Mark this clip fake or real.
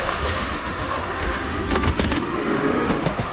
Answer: fake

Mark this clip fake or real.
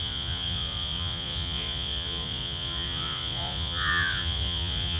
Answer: fake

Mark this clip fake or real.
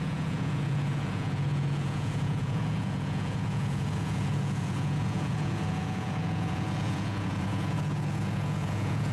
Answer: fake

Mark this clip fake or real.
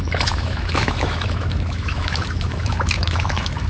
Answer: fake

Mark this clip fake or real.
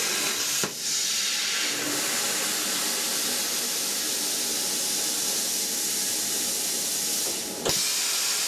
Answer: real